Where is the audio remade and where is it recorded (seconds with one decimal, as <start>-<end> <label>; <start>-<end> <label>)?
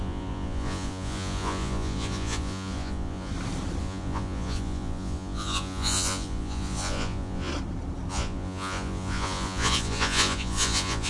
0.0-3.3 remade; 3.3-3.8 recorded; 3.8-7.5 remade; 7.5-8.1 recorded; 8.1-11.1 remade